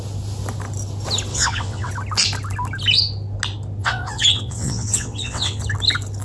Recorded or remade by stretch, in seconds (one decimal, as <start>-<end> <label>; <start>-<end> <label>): 0.0-1.3 recorded; 1.3-1.9 remade; 1.9-3.8 recorded; 3.8-5.6 remade; 5.6-6.2 recorded